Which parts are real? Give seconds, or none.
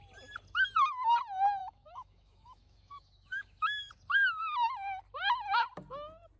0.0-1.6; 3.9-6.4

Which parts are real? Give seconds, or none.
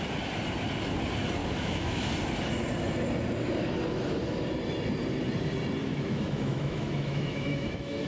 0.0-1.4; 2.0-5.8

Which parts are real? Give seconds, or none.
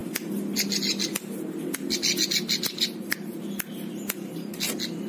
0.0-5.1